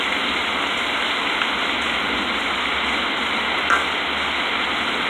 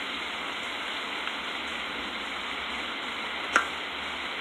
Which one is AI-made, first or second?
second